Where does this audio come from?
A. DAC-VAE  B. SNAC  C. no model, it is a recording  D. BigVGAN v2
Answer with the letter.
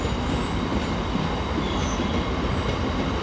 C